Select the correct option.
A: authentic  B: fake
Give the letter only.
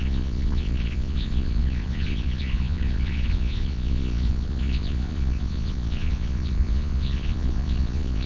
B